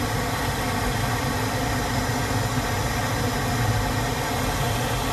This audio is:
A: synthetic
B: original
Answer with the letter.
B